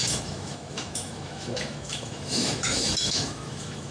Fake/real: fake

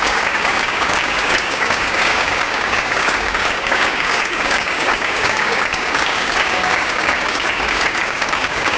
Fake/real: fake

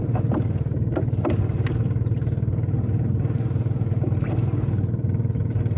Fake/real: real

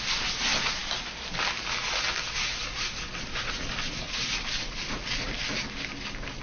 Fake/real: real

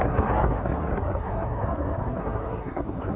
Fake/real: fake